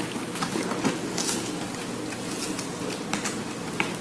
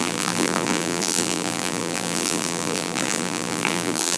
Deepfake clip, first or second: second